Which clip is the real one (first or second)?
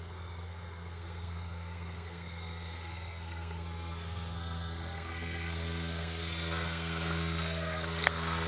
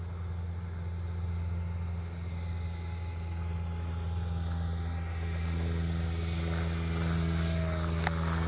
second